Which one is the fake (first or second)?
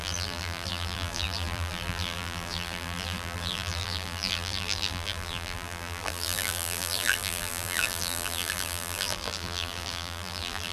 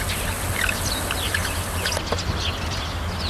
first